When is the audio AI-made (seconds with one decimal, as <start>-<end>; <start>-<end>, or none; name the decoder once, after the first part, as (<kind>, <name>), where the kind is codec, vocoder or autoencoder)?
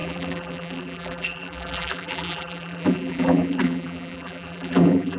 0.0-5.2 (vocoder, BigVGAN v2)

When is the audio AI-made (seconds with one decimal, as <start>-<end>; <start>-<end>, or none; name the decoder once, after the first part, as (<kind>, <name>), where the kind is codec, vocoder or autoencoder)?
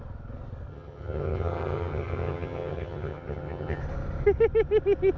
0.7-3.8 (vocoder, HiFi-GAN)